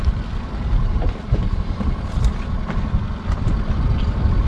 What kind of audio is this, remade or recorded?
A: recorded